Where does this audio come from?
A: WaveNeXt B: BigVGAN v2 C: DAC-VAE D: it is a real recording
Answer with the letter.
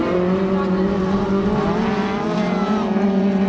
D